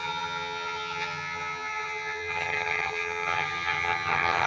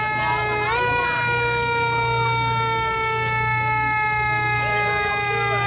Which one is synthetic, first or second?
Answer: first